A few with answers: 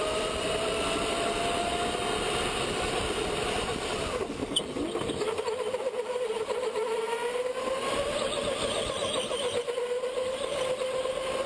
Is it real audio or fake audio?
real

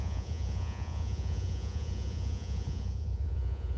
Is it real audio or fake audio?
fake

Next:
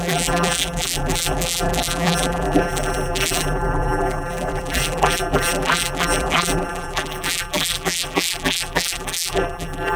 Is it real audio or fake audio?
fake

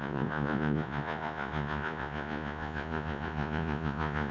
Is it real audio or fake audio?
fake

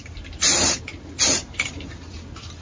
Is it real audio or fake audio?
real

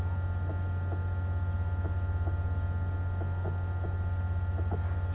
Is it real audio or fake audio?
real